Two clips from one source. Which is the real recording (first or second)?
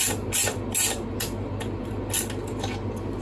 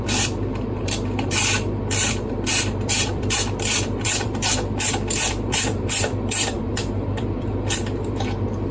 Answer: first